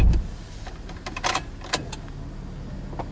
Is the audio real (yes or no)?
yes